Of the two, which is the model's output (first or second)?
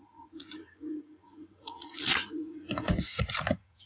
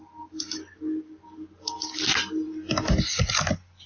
first